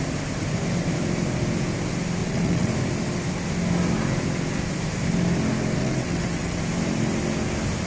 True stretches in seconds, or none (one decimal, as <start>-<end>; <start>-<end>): 0.0-2.2; 2.7-5.8; 6.6-7.9